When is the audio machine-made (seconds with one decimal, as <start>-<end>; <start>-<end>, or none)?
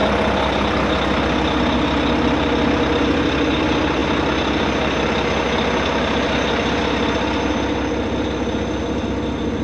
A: none